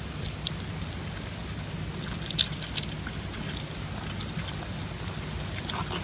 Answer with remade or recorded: recorded